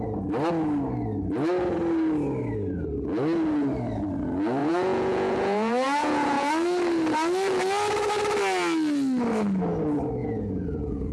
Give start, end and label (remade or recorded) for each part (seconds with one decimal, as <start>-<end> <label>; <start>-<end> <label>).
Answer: 0.0-4.6 recorded; 4.6-6.5 remade; 6.5-10.2 recorded; 10.2-11.1 remade